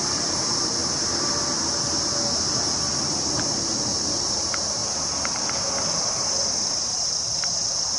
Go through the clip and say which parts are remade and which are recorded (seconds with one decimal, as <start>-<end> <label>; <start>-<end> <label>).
0.0-0.8 remade; 0.8-3.3 recorded; 3.3-4.8 remade; 4.8-6.6 recorded; 6.6-8.0 remade